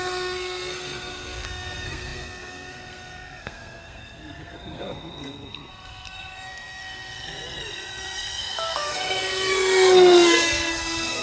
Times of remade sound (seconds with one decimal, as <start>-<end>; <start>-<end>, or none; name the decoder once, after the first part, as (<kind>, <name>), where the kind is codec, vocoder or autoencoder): 0.0-11.2 (codec, SNAC)

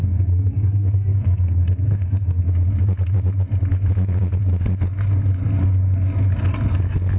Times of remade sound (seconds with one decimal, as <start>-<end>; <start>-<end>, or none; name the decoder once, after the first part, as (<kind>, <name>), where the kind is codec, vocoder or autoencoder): 0.0-2.4 (codec, SNAC)

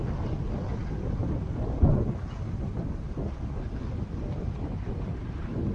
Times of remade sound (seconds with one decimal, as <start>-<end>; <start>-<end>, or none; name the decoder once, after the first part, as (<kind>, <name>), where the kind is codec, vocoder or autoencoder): none